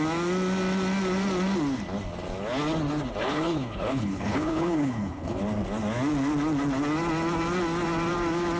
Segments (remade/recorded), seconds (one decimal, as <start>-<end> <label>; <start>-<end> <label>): 0.0-3.2 recorded; 3.2-5.4 remade; 5.4-8.6 recorded